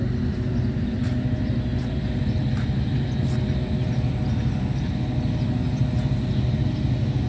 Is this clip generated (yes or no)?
no